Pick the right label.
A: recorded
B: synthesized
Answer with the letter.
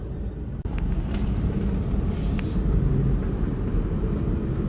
A